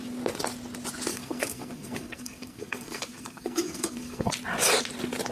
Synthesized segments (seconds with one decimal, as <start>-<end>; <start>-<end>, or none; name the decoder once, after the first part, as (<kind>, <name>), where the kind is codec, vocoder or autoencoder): 1.1-4.3 (codec, SNAC)